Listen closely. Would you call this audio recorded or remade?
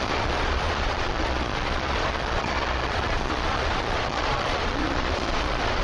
remade